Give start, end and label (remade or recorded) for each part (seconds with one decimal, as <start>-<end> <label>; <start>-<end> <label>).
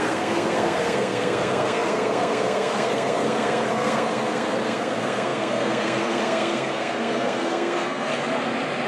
0.0-8.1 remade; 8.1-8.9 recorded